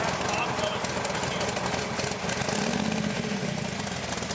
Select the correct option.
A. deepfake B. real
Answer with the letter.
B